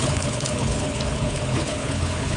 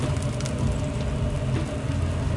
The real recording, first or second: second